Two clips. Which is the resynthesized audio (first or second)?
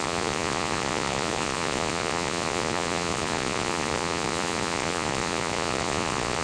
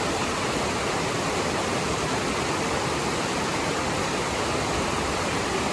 first